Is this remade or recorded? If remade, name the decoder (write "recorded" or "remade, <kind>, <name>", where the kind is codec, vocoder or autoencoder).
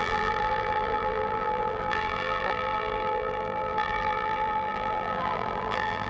remade, vocoder, BigVGAN v2